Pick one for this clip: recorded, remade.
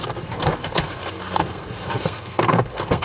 remade